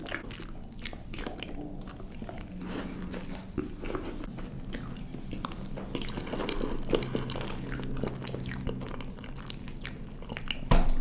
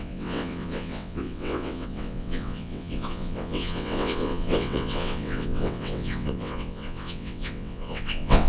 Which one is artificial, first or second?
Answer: second